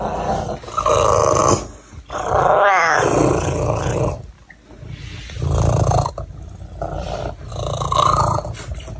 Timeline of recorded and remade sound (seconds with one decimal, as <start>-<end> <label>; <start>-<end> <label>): 0.0-9.0 recorded